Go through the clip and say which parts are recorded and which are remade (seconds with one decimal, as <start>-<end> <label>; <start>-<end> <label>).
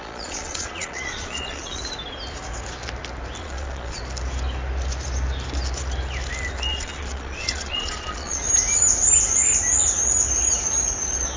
0.0-1.8 remade; 1.8-3.4 recorded; 3.4-4.0 remade; 4.0-6.7 recorded; 6.7-8.4 remade; 8.4-11.4 recorded